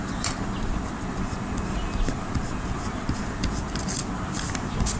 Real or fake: real